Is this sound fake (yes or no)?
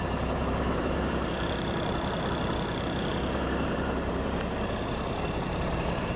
yes